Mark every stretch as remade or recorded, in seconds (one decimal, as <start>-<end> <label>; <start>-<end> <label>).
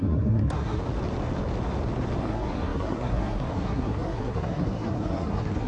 0.0-0.8 remade; 0.8-2.2 recorded; 2.2-5.7 remade